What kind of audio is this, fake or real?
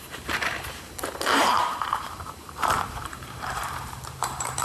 fake